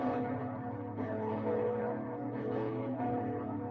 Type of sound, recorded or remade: remade